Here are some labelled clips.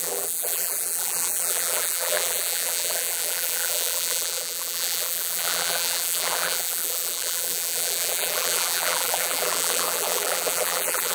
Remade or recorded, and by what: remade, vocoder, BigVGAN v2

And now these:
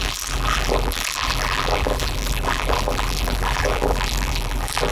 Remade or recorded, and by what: remade, vocoder, BigVGAN v2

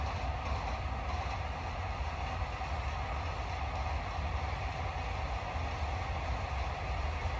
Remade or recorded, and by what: recorded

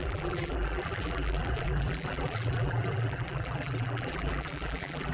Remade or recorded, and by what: remade, vocoder, BigVGAN v2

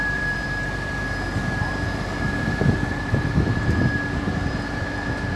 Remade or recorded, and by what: remade, vocoder, BigVGAN v2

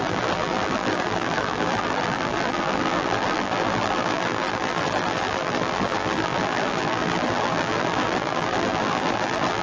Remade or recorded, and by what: remade, vocoder, BigVGAN v2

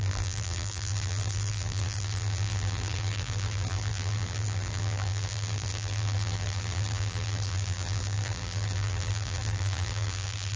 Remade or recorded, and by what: remade, vocoder, BigVGAN v2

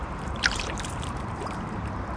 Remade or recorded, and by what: remade, vocoder, BigVGAN v2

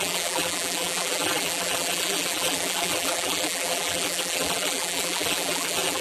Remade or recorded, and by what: remade, vocoder, BigVGAN v2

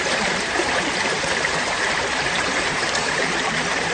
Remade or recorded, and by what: remade, vocoder, BigVGAN v2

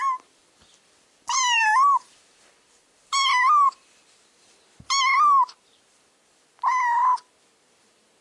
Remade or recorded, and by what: remade, vocoder, BigVGAN v2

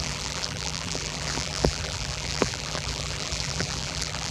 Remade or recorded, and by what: remade, vocoder, BigVGAN v2